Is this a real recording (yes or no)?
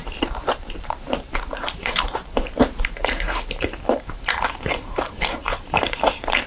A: no